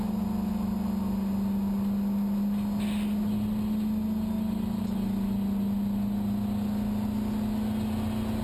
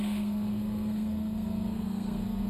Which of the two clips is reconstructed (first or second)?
second